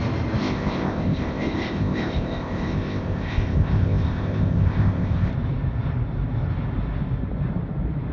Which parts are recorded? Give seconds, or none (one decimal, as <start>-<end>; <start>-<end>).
0.0-0.4; 5.3-8.1